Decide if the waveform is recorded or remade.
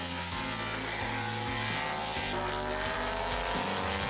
recorded